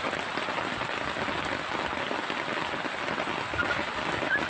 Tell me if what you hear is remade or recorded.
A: recorded